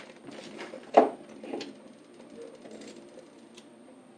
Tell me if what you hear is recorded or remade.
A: remade